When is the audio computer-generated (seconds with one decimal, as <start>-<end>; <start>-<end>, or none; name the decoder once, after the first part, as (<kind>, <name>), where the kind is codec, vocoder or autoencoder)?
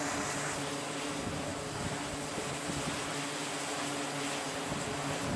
none